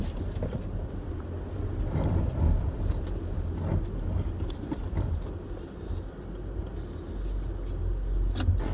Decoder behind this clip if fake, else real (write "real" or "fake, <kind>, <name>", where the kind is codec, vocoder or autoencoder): real